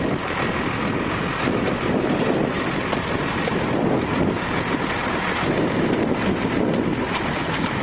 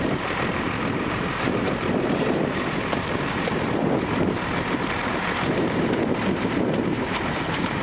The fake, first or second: second